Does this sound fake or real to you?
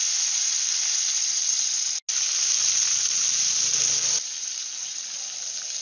real